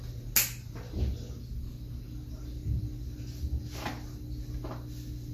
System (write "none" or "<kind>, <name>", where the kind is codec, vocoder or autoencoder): none